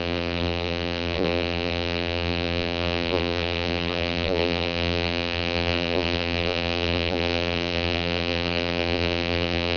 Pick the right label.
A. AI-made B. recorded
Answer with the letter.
A